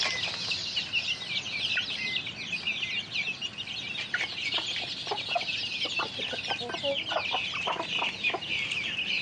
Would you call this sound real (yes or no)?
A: yes